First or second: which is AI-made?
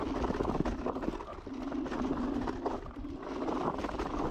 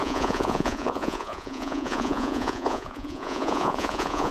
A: second